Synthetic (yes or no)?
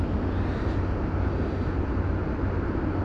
no